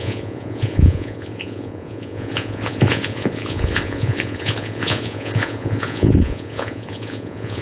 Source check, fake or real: fake